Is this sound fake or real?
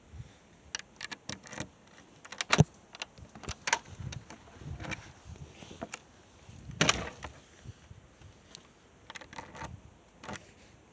real